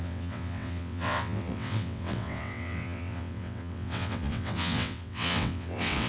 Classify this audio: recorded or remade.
remade